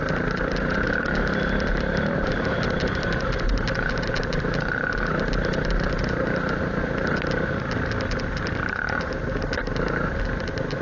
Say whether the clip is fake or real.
real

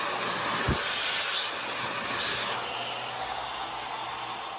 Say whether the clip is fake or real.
real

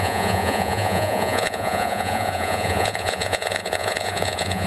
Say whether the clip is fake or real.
fake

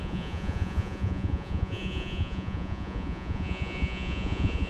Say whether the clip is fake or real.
fake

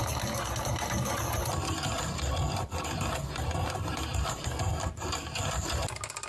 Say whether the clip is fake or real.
real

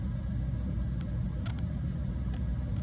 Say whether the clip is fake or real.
real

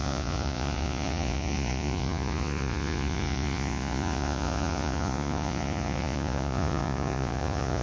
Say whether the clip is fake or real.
fake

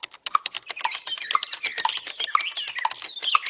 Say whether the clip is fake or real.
real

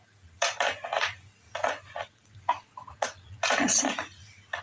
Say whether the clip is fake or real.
fake